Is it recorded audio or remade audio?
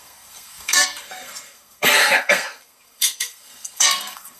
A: remade